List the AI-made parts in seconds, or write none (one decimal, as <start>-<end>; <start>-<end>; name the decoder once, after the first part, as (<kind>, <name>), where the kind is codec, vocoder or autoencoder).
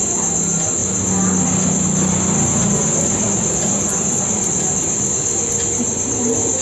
none